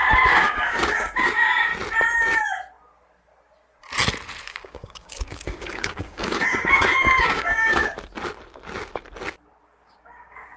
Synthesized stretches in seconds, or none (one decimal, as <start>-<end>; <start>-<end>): 0.0-1.7; 4.4-7.8; 9.6-10.6